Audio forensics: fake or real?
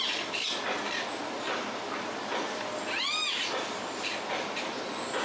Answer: real